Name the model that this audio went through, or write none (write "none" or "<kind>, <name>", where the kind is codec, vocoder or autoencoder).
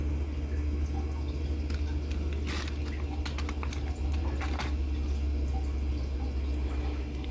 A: none